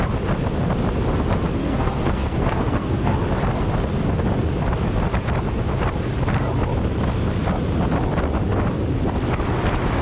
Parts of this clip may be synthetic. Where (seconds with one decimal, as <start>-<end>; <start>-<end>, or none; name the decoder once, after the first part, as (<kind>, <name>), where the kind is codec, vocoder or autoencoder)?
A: 1.6-3.2 (codec, SNAC)